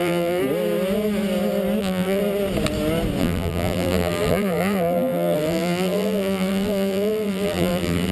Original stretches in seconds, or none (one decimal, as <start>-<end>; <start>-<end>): 0.4-1.8; 2.2-3.2